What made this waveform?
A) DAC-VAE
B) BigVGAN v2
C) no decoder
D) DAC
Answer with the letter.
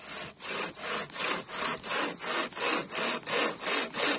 C